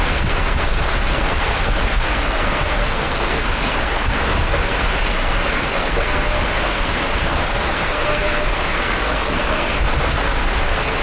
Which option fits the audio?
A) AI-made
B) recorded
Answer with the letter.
A